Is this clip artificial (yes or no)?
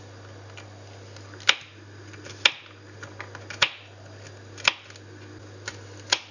no